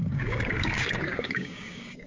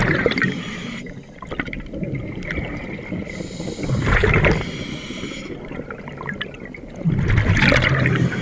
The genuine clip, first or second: second